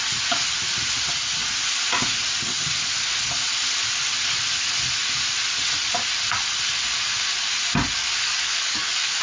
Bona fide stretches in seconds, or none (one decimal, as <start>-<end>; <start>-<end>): 0.0-8.0